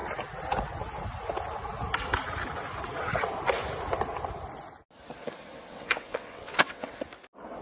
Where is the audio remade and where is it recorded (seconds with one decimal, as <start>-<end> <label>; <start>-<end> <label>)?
0.0-5.7 recorded; 5.7-6.9 remade; 6.9-7.6 recorded